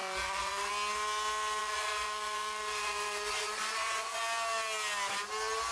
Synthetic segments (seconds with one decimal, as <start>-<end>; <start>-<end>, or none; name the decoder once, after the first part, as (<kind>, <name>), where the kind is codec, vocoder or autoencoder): 0.0-0.7 (vocoder, Vocos); 1.6-4.2